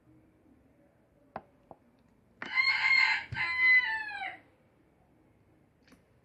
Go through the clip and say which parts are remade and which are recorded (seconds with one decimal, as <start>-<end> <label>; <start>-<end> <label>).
0.0-6.2 recorded